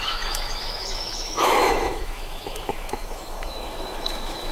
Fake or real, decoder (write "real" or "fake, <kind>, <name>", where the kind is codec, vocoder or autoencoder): fake, autoencoder, DAC-VAE